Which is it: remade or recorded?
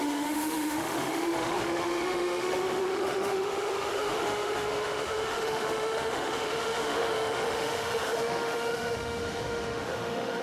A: remade